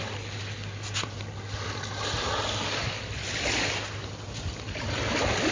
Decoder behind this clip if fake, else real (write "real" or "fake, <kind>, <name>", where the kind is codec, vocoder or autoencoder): real